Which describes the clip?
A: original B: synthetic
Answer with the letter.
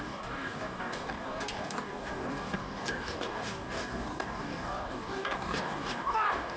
B